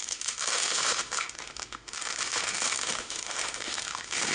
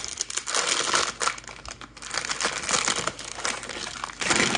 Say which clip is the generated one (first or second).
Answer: first